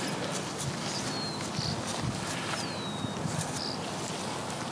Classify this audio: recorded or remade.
recorded